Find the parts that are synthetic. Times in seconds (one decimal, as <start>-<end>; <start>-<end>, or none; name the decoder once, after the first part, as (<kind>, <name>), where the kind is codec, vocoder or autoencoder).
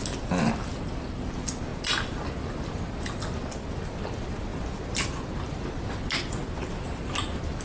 none